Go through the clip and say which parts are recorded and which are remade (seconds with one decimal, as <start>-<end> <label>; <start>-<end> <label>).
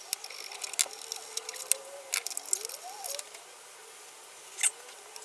0.0-5.2 recorded